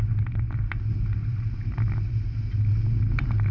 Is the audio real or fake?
real